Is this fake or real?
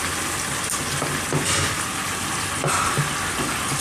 real